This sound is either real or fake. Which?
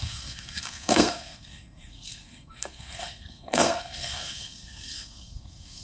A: fake